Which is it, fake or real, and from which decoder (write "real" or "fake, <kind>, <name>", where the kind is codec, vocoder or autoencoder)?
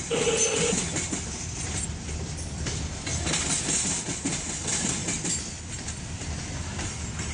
real